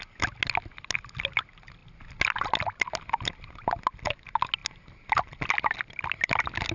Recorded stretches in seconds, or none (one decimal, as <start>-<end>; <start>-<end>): 0.0-6.7